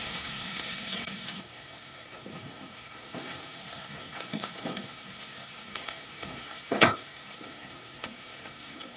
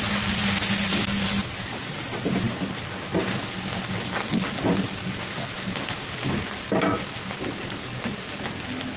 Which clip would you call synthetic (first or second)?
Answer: first